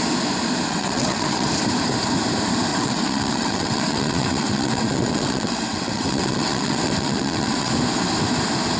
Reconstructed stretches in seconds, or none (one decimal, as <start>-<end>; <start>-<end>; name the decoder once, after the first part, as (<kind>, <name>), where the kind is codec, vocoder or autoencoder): 0.7-1.5 (vocoder, WaveNeXt); 2.7-7.7